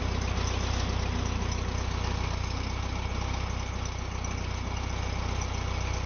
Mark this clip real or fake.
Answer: real